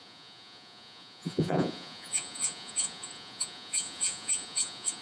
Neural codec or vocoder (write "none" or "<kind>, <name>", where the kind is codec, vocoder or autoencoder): vocoder, Vocos